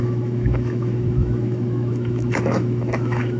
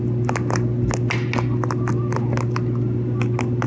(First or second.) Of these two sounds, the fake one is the first